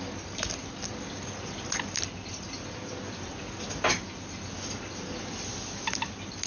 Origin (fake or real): real